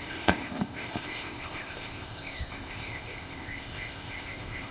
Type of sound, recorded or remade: remade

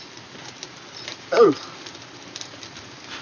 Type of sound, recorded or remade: recorded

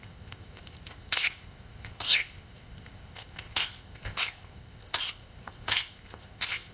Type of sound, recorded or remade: remade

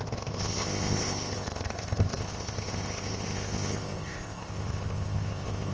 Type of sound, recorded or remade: remade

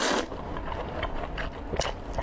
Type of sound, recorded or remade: recorded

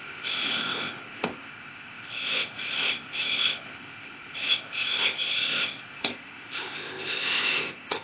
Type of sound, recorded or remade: remade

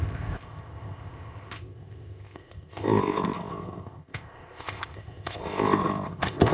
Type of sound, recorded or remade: remade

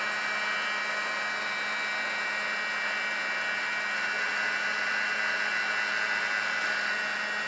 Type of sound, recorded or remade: recorded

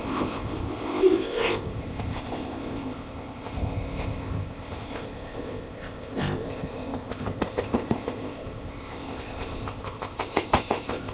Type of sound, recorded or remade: remade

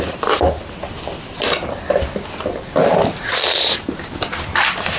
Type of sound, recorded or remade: recorded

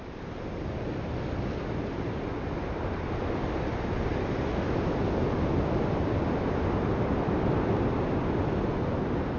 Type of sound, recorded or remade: recorded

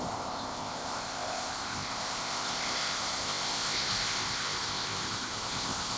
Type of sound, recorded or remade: remade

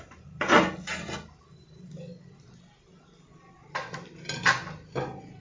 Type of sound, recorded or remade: recorded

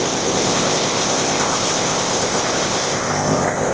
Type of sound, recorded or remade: remade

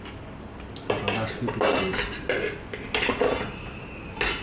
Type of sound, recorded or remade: recorded